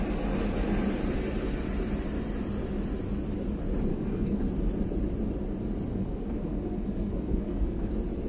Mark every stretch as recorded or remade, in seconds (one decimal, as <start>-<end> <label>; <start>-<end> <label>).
0.0-3.9 recorded; 3.9-4.4 remade; 4.4-5.9 recorded; 5.9-7.9 remade; 7.9-8.3 recorded

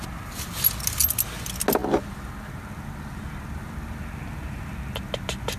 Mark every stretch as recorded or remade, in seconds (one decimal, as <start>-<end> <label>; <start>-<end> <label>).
0.0-5.6 recorded

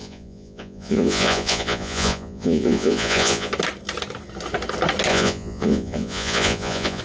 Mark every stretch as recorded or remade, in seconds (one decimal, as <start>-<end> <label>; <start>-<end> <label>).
0.0-3.5 remade; 3.5-5.1 recorded; 5.1-7.0 remade